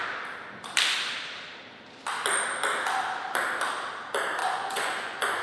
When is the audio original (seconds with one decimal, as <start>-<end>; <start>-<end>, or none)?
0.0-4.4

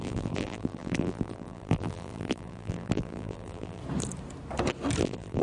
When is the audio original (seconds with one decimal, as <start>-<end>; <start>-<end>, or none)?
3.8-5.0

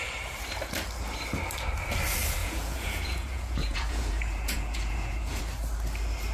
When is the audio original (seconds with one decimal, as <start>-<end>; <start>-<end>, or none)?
0.0-2.4; 5.4-6.3